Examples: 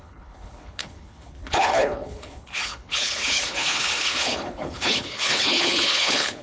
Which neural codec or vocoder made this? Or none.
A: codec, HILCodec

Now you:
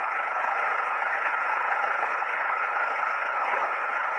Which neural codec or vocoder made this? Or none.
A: codec, HILCodec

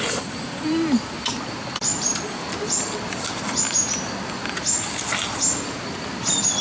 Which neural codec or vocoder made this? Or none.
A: none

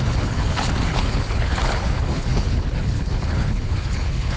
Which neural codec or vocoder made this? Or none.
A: codec, HILCodec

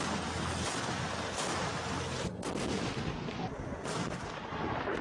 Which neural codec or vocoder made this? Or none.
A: none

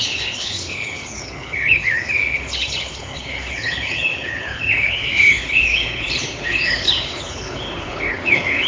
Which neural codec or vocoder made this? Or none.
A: codec, HILCodec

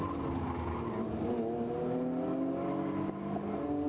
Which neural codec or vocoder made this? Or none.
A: none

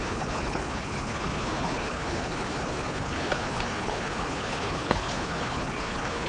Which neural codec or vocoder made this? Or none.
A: codec, HILCodec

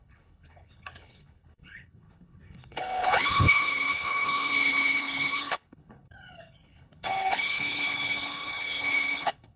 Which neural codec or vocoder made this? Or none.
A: codec, HILCodec